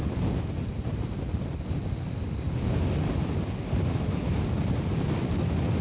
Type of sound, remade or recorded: recorded